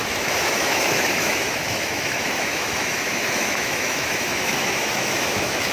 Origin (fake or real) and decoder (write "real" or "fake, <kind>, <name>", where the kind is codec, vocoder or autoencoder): fake, autoencoder, DAC-VAE